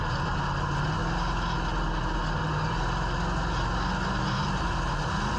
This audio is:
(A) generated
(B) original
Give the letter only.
B